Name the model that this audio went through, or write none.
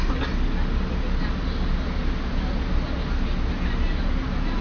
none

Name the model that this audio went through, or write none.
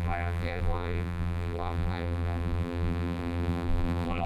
vocoder, BigVGAN v2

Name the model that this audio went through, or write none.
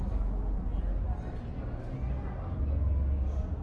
none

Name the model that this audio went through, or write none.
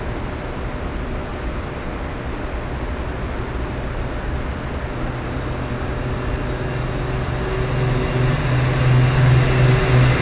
none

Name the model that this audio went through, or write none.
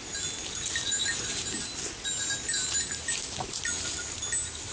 none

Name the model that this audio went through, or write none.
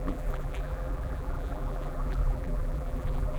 vocoder, BigVGAN v2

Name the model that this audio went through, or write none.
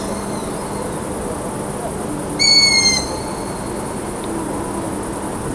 none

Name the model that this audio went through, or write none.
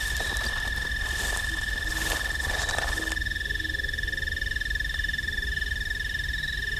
none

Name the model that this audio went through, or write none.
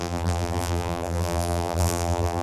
vocoder, BigVGAN v2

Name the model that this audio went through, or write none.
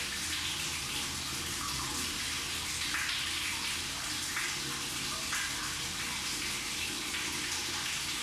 none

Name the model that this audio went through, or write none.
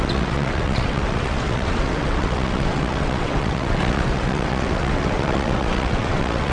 vocoder, WaveNeXt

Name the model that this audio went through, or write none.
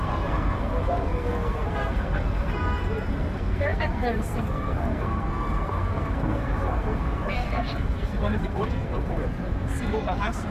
codec, SNAC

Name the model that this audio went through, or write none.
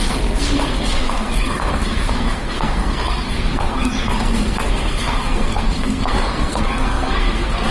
codec, SNAC